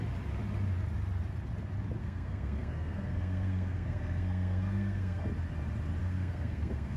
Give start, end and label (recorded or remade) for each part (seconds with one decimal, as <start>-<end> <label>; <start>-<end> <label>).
0.0-2.0 recorded; 2.0-5.2 remade; 5.2-6.0 recorded; 6.0-7.0 remade